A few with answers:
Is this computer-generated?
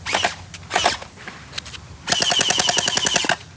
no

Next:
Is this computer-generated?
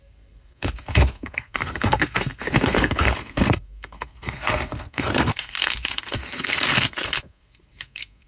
yes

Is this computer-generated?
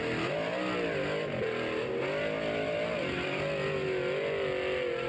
no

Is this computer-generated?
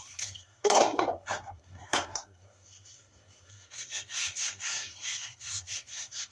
yes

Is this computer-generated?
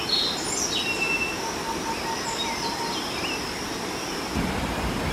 no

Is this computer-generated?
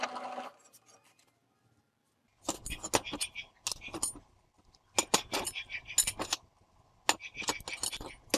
no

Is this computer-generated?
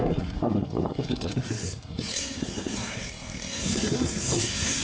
yes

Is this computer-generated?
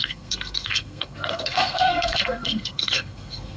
yes